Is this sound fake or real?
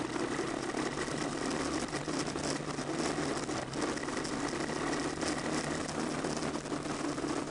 real